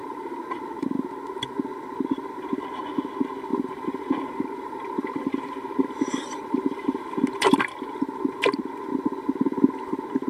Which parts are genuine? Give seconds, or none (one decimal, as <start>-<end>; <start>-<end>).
0.6-3.5; 7.6-10.3